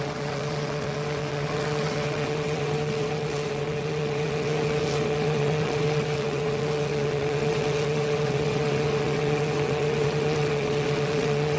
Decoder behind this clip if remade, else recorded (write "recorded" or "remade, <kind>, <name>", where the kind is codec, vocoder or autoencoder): remade, vocoder, WaveNeXt